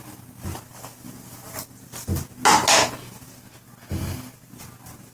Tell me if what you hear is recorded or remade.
recorded